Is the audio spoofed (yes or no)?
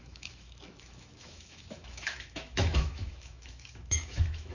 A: yes